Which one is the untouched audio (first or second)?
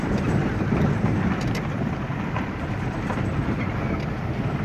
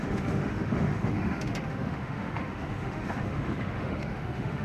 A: first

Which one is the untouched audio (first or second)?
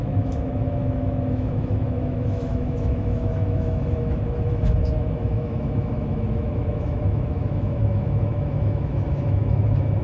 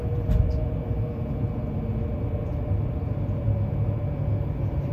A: second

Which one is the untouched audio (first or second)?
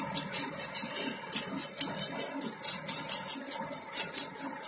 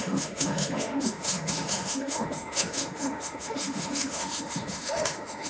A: first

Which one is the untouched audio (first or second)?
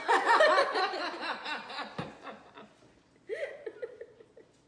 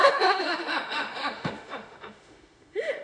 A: first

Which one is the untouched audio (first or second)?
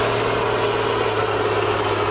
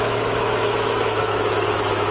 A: first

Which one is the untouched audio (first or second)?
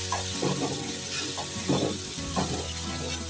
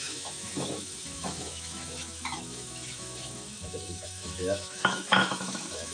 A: first